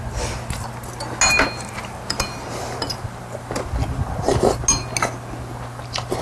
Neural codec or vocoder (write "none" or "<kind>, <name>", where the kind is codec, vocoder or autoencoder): none